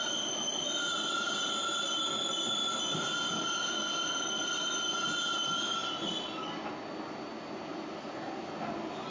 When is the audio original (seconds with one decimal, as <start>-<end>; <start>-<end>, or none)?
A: 0.0-9.1